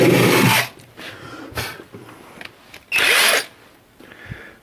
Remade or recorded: recorded